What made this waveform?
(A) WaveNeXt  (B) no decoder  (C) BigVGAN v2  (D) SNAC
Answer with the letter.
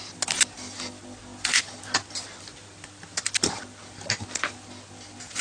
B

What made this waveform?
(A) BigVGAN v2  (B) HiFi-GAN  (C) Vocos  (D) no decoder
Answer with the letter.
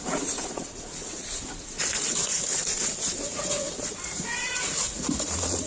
C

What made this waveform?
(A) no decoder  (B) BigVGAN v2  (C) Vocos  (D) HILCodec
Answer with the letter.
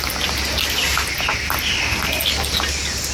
A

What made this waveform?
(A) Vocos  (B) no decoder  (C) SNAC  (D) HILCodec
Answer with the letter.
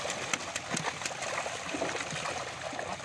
B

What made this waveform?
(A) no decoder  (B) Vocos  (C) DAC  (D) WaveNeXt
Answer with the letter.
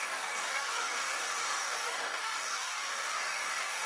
C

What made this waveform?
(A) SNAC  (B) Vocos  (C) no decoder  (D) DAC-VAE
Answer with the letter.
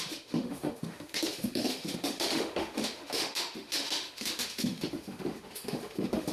D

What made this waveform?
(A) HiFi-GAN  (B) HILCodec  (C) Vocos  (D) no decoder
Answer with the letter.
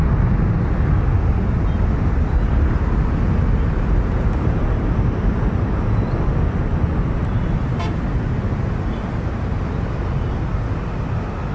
D